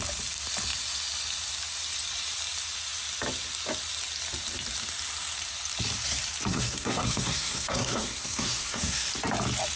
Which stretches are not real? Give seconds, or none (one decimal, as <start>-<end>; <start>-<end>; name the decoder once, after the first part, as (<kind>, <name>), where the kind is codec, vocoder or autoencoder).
6.5-9.1 (codec, SNAC)